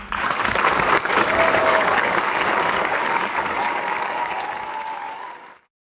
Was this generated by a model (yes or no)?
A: yes